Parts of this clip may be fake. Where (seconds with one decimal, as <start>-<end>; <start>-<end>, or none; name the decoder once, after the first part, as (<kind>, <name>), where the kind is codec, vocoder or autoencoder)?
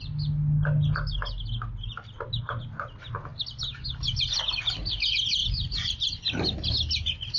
none